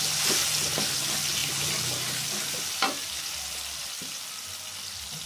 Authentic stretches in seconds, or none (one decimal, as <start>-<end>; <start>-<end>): 0.0-5.3